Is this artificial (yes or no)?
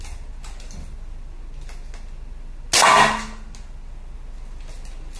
no